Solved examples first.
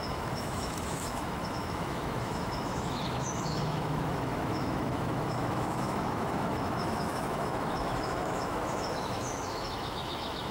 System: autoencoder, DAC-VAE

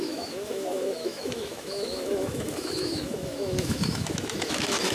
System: autoencoder, DAC-VAE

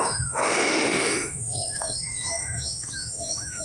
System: autoencoder, DAC-VAE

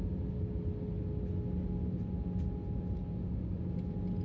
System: none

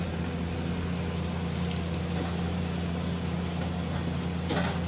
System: none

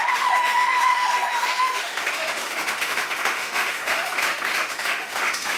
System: autoencoder, DAC-VAE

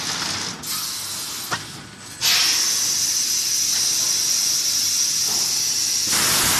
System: none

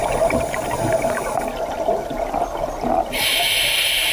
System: none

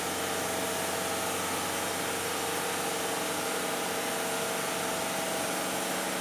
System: none